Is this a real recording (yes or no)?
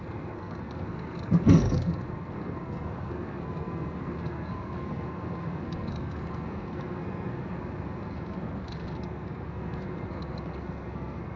no